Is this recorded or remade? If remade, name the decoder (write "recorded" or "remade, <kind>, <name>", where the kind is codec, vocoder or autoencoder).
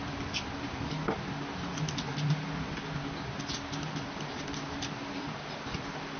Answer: recorded